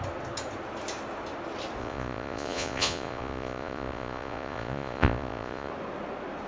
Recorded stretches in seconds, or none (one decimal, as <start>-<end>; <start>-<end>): 0.0-1.8; 5.7-6.5